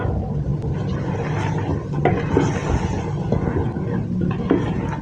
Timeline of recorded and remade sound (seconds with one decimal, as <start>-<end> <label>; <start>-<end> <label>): 0.0-5.0 recorded